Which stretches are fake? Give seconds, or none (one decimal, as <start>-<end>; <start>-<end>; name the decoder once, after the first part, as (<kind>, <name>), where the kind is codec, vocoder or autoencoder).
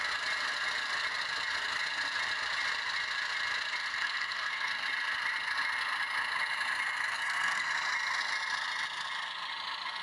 3.8-4.7 (codec, SNAC); 7.1-7.7